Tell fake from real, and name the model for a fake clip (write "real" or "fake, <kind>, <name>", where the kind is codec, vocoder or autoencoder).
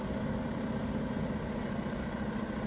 real